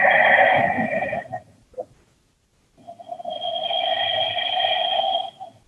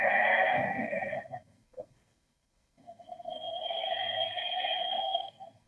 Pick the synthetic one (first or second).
second